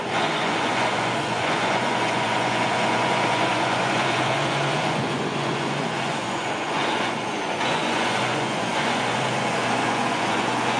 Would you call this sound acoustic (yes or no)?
no